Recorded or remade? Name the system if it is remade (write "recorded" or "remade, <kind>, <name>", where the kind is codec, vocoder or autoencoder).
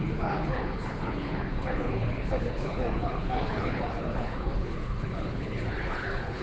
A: remade, codec, HILCodec